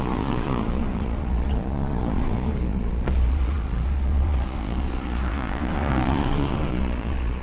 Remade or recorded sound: remade